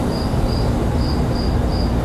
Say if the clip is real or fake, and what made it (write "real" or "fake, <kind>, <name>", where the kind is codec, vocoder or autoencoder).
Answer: real